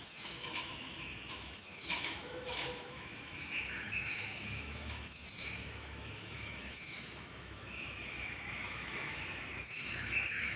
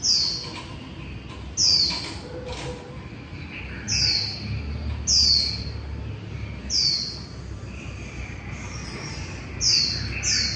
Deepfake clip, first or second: first